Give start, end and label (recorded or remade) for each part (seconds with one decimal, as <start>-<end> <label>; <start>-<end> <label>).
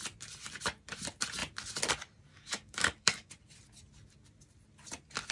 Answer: 0.0-2.3 recorded; 2.3-3.3 remade; 3.3-5.3 recorded